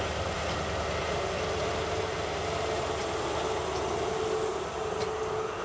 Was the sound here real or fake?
real